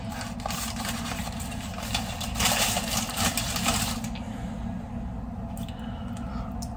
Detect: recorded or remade recorded